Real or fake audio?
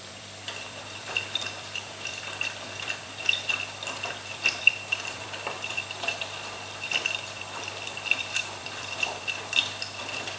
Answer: fake